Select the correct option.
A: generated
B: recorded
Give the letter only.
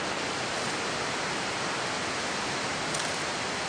B